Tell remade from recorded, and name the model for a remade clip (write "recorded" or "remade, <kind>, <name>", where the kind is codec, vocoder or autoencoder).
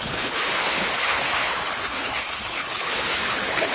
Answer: remade, codec, HILCodec